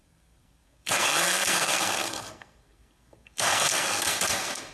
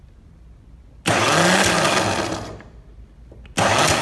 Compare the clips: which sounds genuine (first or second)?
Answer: second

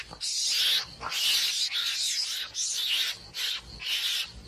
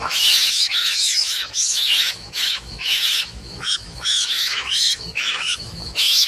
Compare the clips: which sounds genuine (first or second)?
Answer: first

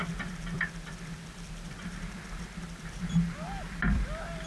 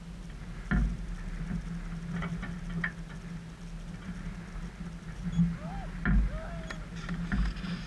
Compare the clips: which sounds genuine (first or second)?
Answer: second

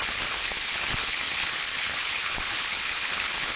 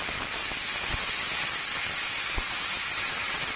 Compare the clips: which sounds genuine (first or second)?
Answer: second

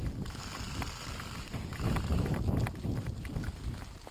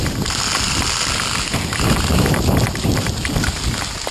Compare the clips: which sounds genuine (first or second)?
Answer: first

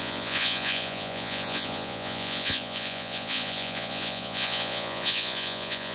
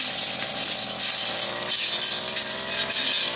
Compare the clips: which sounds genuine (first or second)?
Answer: second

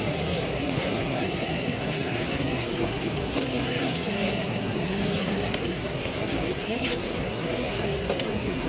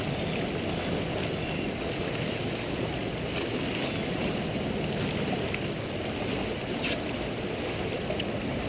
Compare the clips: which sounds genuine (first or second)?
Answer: second